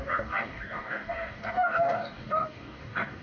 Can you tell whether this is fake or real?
fake